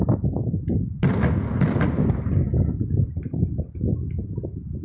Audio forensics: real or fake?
real